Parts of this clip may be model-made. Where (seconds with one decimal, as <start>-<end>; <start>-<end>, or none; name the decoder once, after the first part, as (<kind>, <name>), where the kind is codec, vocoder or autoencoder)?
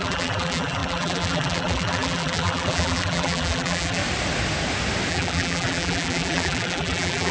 0.0-4.0 (vocoder, BigVGAN v2); 5.1-7.3